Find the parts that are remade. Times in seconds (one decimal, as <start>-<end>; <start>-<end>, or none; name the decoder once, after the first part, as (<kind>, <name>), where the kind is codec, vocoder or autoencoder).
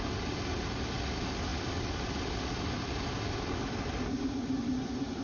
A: none